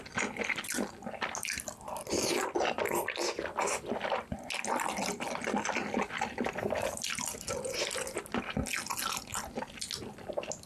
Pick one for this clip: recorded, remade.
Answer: recorded